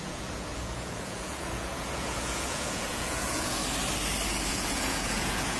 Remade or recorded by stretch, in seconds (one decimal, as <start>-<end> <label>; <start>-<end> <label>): 0.0-3.6 remade; 3.6-4.5 recorded; 4.5-5.6 remade